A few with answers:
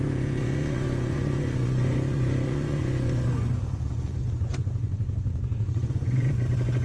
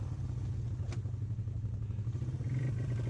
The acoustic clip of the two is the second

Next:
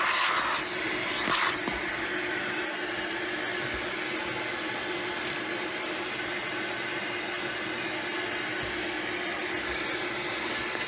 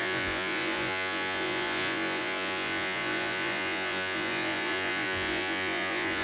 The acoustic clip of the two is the first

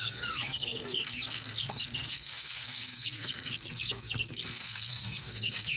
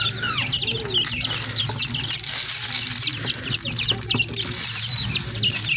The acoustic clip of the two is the second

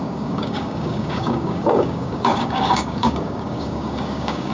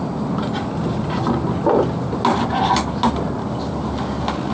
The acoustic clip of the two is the second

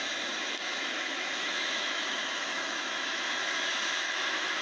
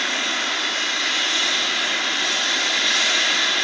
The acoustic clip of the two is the second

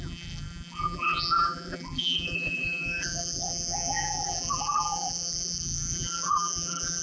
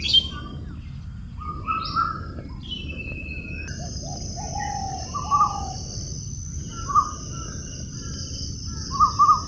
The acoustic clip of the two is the second